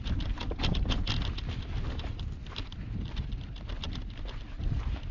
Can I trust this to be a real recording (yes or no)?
yes